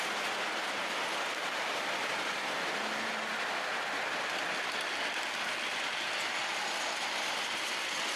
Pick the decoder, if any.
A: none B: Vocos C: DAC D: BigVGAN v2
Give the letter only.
A